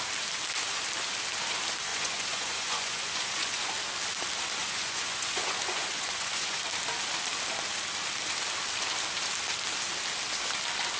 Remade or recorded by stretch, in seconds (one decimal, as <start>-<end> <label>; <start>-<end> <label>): 0.0-1.9 recorded; 1.9-3.7 remade; 3.7-4.6 recorded; 4.6-6.6 remade; 6.6-11.0 recorded